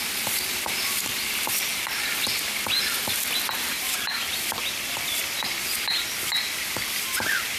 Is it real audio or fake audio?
fake